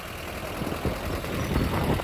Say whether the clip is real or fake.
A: real